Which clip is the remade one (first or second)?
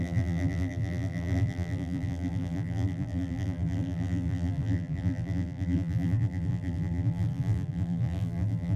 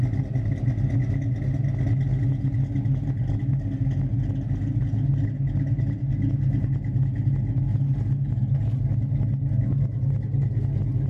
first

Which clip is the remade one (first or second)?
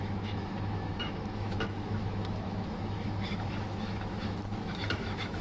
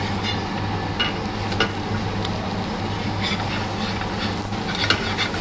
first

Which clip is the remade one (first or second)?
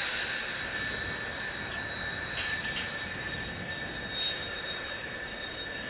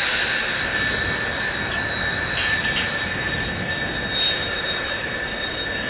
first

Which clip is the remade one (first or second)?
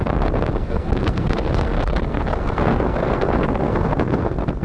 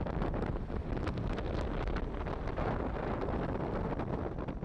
first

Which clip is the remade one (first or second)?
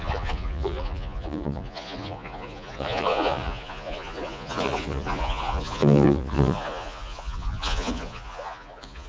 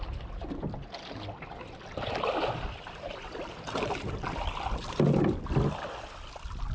first